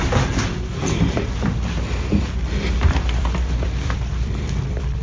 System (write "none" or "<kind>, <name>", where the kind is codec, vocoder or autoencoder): vocoder, BigVGAN v2